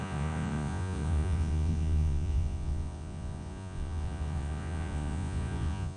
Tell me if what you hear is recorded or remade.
remade